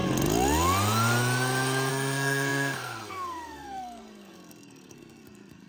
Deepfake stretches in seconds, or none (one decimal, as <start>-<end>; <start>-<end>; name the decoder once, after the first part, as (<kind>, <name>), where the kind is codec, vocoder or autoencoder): 1.9-5.7 (codec, SNAC)

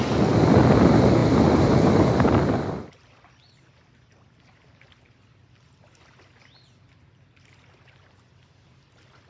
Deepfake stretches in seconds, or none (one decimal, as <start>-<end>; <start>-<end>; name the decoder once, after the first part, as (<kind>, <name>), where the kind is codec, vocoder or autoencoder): none

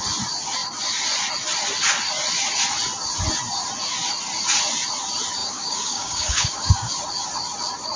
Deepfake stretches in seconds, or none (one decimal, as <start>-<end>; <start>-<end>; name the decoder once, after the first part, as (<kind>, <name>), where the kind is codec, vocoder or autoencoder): 5.4-6.9 (codec, DAC)

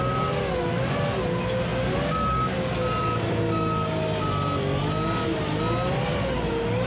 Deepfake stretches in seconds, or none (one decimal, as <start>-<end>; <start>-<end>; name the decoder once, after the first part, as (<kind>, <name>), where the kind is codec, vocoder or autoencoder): none